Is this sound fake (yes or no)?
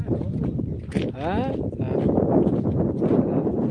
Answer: no